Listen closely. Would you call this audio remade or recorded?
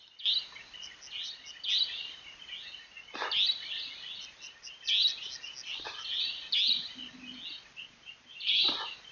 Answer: recorded